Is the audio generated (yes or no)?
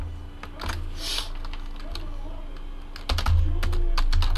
no